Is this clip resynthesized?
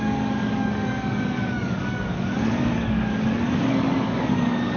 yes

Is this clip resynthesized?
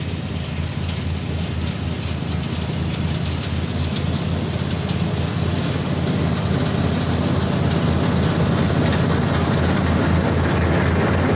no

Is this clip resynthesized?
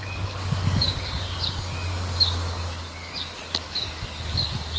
yes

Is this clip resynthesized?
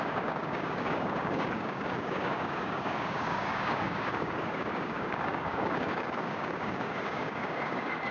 yes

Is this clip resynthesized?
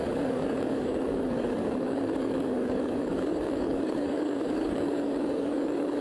yes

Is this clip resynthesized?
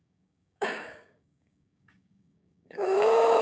yes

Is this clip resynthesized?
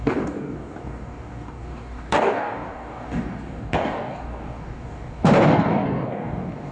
yes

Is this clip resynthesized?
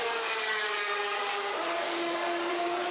yes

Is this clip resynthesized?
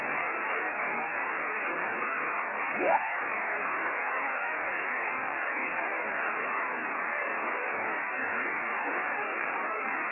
yes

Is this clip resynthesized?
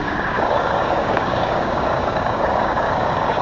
yes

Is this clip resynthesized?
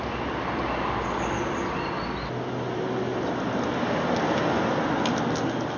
no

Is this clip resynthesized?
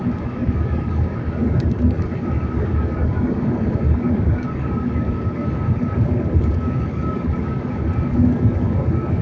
yes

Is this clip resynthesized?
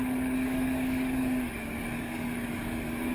yes